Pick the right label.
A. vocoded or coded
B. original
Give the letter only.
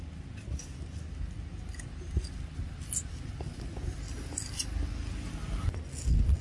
B